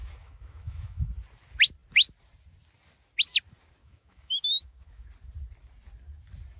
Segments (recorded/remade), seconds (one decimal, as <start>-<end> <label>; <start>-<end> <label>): 0.0-1.1 remade; 1.1-3.8 recorded; 3.8-5.1 remade; 5.1-6.6 recorded